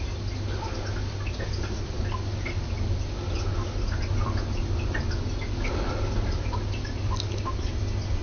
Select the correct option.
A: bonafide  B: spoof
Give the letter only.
A